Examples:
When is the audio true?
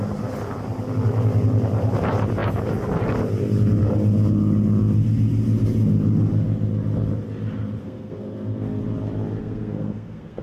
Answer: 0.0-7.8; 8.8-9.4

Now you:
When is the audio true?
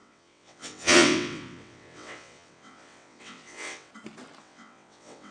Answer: 3.9-4.4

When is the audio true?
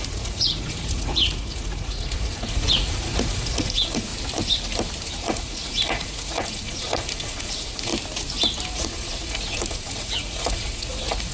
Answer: 4.1-5.0; 7.9-8.7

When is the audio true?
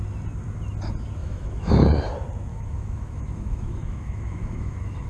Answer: 0.0-1.2; 1.9-2.5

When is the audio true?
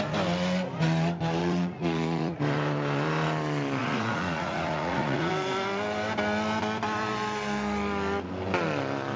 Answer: 0.0-1.4; 2.4-3.8; 5.3-9.2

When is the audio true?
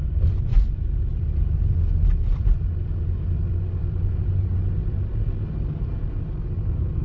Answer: 0.0-7.0